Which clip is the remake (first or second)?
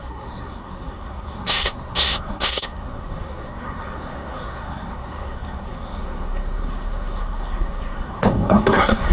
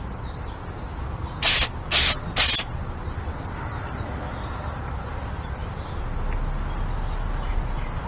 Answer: first